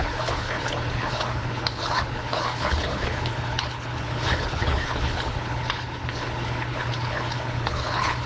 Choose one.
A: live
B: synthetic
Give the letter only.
B